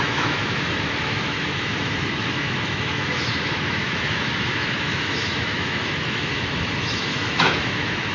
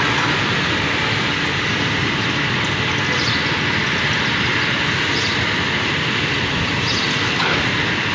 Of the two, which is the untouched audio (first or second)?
second